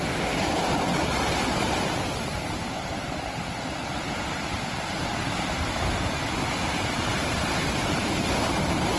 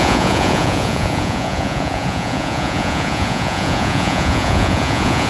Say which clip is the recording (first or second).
first